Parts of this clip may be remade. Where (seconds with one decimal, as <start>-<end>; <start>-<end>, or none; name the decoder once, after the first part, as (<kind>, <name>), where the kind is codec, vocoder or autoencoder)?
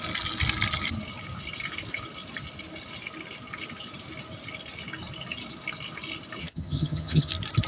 6.4-7.3 (vocoder, HiFi-GAN)